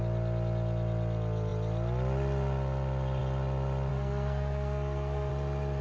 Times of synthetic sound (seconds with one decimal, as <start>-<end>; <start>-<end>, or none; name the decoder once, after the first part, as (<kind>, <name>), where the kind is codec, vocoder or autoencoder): 3.9-5.3 (codec, SNAC)